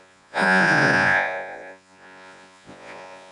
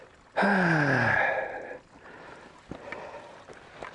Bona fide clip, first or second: second